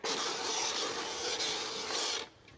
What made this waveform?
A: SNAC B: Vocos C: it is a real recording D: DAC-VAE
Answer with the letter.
C